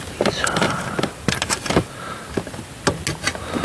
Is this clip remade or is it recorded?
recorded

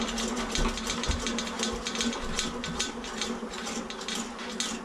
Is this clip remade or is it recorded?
recorded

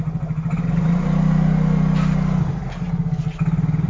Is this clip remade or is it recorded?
recorded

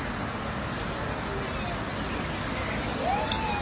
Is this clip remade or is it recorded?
recorded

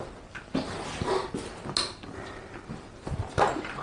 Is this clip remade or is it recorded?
recorded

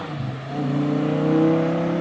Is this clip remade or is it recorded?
recorded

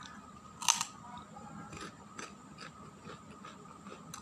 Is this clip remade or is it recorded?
recorded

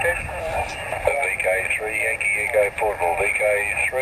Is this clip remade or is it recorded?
recorded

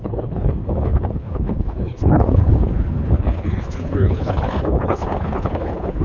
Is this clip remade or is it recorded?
remade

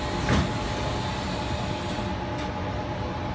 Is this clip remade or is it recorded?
recorded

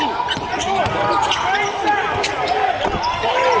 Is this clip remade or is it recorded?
recorded